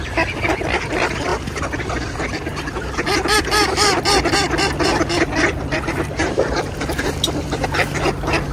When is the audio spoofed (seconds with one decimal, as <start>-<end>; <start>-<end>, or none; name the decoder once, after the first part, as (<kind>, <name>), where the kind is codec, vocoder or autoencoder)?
0.0-8.5 (vocoder, BigVGAN v2)